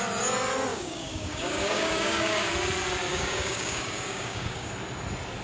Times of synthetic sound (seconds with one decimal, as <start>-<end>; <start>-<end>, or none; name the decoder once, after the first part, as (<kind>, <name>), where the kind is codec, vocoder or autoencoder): 0.7-2.5 (codec, DAC); 3.1-4.7